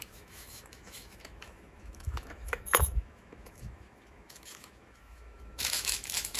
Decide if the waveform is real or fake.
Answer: fake